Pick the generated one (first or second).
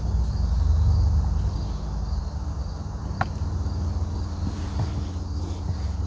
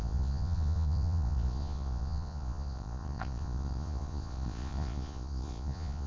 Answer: second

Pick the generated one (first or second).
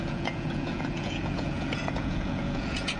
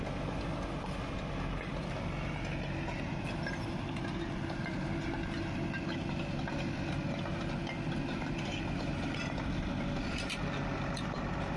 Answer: first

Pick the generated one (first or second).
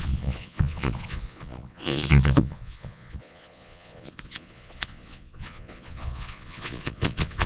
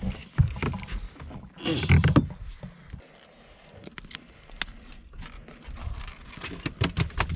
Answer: first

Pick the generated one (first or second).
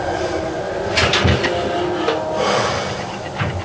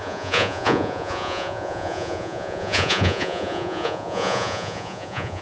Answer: second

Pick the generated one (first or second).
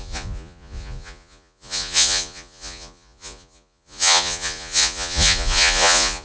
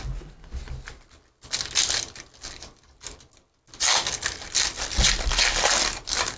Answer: first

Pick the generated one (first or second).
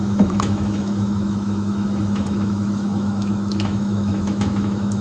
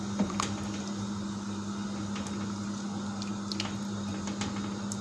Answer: first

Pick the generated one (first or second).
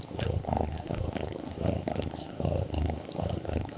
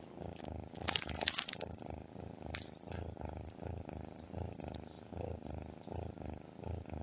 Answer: first